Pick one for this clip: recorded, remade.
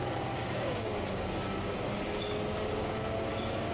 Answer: remade